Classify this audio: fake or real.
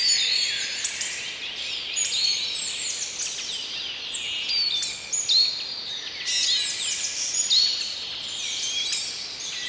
real